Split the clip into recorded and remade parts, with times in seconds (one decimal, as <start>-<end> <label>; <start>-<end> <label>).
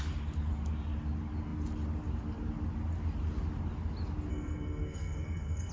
0.0-4.3 recorded; 4.3-5.7 remade